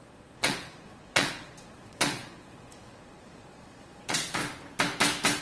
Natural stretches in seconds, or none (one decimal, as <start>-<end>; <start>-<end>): 4.4-5.4